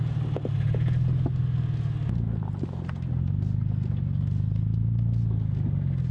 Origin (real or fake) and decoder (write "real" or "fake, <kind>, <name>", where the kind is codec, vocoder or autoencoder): real